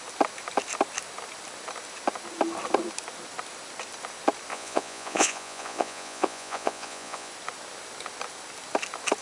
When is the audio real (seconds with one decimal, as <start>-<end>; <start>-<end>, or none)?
0.0-4.5; 7.3-9.2